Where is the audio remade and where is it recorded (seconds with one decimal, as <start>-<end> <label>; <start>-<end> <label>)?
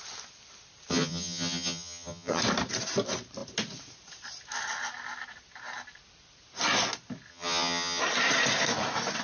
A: 0.0-0.9 recorded; 0.9-2.4 remade; 2.4-7.3 recorded; 7.3-8.0 remade; 8.0-9.2 recorded